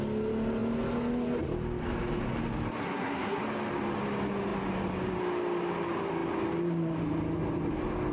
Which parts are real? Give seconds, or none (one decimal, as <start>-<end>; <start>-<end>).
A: 0.0-2.8; 3.4-8.1